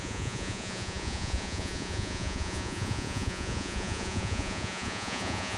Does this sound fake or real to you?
fake